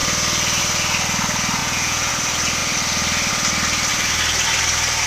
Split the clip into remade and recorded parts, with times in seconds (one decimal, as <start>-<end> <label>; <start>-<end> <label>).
0.0-1.6 recorded; 1.6-2.1 remade; 2.1-5.1 recorded